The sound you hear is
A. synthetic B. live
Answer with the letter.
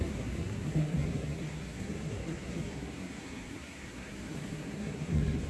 A